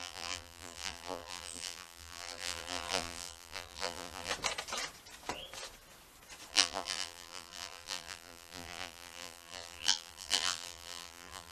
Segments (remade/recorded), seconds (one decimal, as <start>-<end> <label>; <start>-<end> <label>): 0.0-4.3 remade; 4.3-6.5 recorded; 6.5-11.5 remade